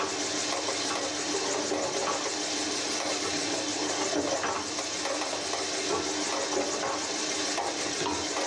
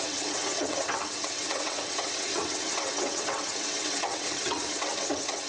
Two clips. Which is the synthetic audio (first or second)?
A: second